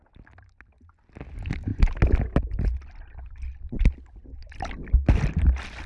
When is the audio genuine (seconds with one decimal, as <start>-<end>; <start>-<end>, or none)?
0.0-5.9